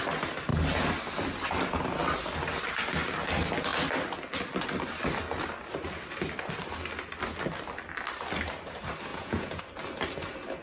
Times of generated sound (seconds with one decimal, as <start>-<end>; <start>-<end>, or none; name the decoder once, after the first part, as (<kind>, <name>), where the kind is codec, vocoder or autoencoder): 9.1-9.6 (vocoder, Vocos)